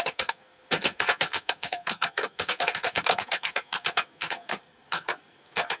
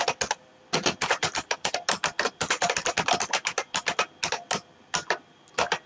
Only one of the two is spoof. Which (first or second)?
first